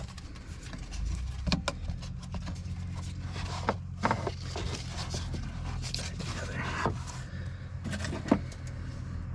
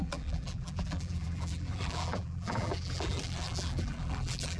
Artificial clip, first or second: second